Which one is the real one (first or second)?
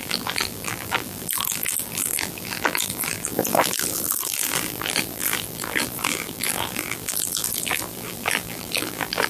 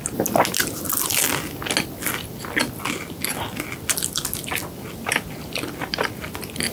second